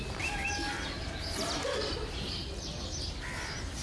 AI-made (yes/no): no